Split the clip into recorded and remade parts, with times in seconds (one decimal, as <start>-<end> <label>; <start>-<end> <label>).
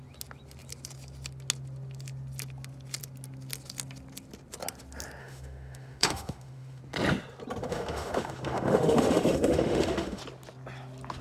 0.0-5.2 recorded; 5.2-6.8 remade; 6.8-7.6 recorded; 7.6-10.2 remade; 10.2-11.2 recorded